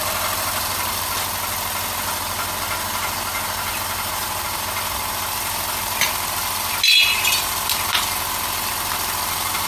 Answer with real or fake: real